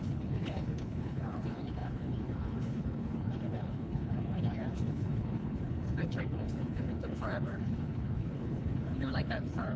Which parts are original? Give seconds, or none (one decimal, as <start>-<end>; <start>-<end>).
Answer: none